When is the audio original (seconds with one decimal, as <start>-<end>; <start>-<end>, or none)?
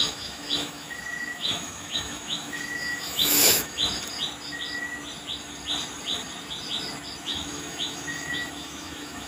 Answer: 3.8-7.2